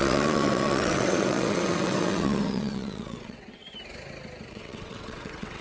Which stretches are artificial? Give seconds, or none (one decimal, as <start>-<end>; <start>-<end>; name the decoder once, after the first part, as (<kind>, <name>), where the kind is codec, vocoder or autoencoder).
0.0-3.6 (vocoder, WaveNeXt); 4.5-5.6